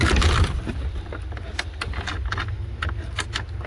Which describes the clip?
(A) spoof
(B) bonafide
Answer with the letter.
B